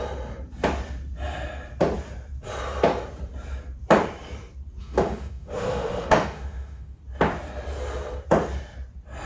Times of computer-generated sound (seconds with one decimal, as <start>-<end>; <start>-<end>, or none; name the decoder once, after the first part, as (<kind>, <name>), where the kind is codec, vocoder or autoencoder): 4.8-7.0 (autoencoder, DAC-VAE)